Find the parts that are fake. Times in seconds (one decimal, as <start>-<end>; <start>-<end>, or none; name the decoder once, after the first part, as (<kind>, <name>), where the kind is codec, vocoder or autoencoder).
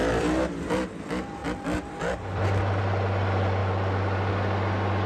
0.0-0.7 (vocoder, BigVGAN v2); 1.4-2.8